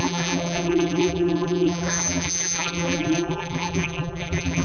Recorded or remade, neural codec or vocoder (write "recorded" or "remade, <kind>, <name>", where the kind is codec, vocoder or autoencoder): remade, vocoder, BigVGAN v2